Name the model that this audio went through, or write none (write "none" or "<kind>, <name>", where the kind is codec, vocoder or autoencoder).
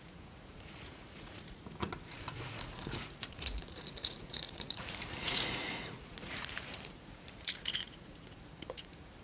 vocoder, Vocos